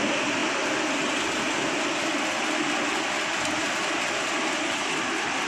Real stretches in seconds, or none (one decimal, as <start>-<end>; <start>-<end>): 0.0-5.5